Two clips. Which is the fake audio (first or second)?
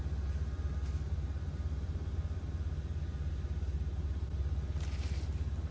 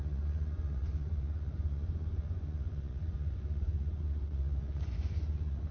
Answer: second